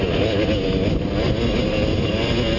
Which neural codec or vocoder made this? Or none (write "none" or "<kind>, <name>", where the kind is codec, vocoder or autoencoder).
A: none